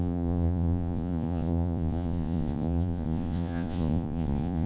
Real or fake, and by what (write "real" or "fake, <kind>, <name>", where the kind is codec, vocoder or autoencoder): fake, vocoder, Vocos